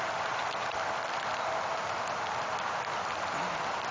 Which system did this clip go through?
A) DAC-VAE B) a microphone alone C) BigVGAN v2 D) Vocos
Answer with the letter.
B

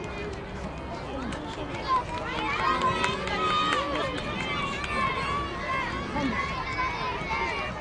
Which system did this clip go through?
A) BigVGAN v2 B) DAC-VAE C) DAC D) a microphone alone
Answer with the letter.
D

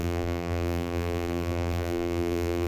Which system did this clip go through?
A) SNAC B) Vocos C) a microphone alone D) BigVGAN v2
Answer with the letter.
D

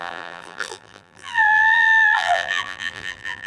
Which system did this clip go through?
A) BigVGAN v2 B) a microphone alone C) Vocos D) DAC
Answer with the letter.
A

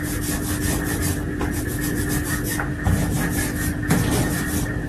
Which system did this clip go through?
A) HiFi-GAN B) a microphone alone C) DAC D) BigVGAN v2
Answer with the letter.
B